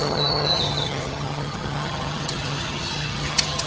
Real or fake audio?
fake